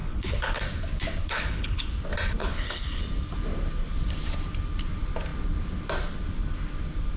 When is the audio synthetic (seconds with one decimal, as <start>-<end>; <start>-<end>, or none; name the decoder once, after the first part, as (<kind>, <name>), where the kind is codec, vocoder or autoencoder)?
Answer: 0.0-0.6 (codec, HILCodec); 1.2-1.9; 2.4-3.0